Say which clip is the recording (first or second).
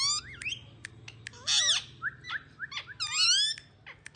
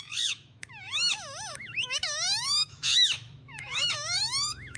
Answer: first